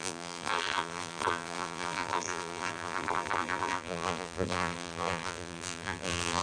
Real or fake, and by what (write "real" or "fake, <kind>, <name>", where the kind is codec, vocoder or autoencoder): fake, vocoder, BigVGAN v2